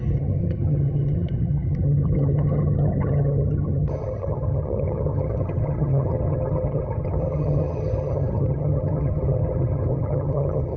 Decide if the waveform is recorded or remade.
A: remade